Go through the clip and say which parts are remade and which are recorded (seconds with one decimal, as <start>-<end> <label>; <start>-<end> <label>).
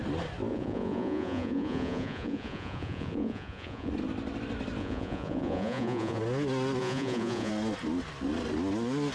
0.0-0.5 recorded; 0.5-3.9 remade; 3.9-4.8 recorded; 4.8-6.2 remade; 6.2-6.8 recorded; 6.8-7.5 remade; 7.5-9.1 recorded